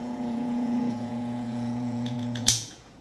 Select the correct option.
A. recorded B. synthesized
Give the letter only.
B